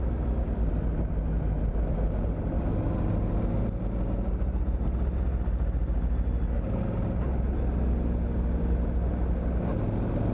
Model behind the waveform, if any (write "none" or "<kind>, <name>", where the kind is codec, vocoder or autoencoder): none